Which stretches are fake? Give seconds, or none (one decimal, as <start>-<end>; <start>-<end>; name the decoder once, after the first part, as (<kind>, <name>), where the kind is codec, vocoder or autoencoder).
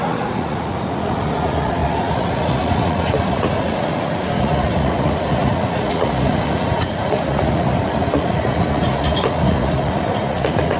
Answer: 0.0-10.8 (vocoder, Vocos)